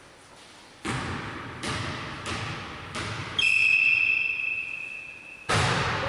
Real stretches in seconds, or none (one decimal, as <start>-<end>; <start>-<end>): none